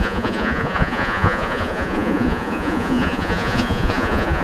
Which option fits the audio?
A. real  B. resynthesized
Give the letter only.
B